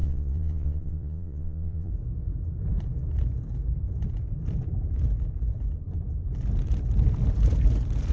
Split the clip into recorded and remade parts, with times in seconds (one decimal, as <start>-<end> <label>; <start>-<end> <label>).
0.0-1.9 remade; 1.9-8.1 recorded